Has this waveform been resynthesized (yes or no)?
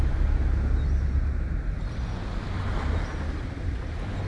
no